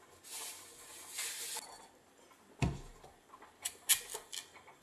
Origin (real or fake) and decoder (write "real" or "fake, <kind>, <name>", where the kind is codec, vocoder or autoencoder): real